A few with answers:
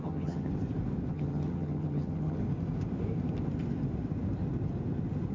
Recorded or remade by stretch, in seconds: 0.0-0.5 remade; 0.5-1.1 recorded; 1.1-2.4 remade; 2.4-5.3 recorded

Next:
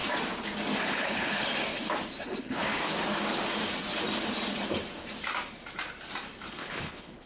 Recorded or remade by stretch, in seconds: 0.0-0.9 recorded; 0.9-1.5 remade; 1.5-2.4 recorded; 2.4-2.9 remade; 2.9-6.5 recorded; 6.5-7.3 remade

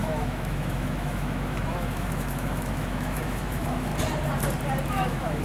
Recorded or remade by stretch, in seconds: 0.0-3.9 remade; 3.9-4.9 recorded; 4.9-5.4 remade

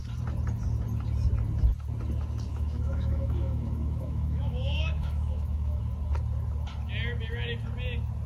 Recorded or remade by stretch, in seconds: 0.0-2.5 recorded; 2.5-5.8 remade; 5.8-8.3 recorded